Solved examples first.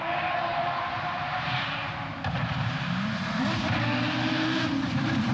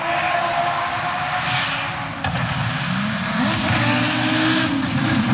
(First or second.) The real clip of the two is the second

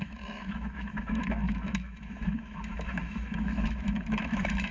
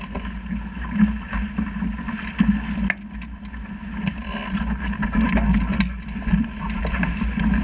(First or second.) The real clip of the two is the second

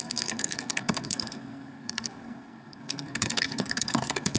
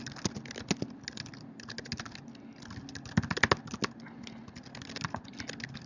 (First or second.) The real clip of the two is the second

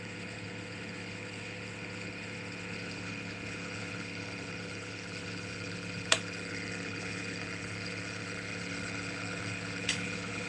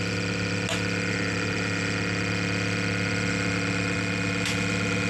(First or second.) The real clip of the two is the second